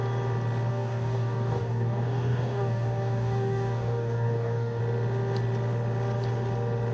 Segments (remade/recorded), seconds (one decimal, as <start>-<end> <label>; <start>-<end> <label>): 0.0-0.7 recorded; 0.7-4.8 remade; 4.8-6.9 recorded

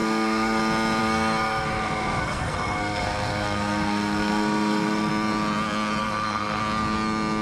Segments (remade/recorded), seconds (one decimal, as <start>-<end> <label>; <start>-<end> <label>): 0.0-0.6 remade; 0.6-1.0 recorded; 1.0-5.1 remade; 5.1-6.0 recorded; 6.0-6.6 remade; 6.6-7.4 recorded

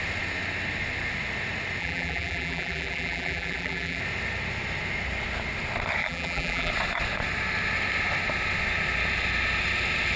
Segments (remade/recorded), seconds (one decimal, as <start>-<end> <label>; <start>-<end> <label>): 0.0-1.8 recorded; 1.8-4.0 remade; 4.0-6.0 recorded; 6.0-6.7 remade; 6.7-10.2 recorded

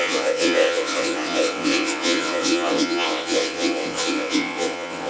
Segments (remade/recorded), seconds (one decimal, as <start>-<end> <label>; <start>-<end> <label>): 0.0-5.1 remade

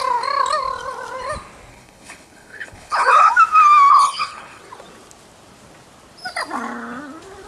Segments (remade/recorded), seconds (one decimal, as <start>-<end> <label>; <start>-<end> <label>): 0.0-1.7 recorded; 1.7-3.3 remade; 3.3-3.9 recorded; 3.9-4.6 remade; 4.6-7.5 recorded

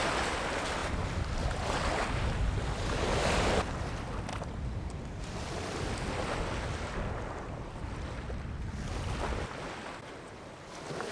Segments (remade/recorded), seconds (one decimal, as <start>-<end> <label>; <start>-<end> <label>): 0.0-11.1 recorded

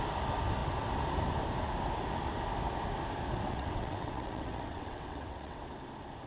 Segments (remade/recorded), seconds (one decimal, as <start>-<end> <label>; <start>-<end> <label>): 0.0-3.5 recorded; 3.5-5.6 remade; 5.6-6.3 recorded